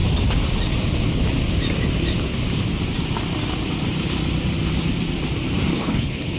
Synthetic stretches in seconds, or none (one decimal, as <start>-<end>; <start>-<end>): 5.7-6.4